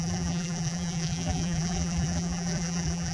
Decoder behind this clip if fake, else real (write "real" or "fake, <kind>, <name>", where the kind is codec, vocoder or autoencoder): fake, vocoder, BigVGAN v2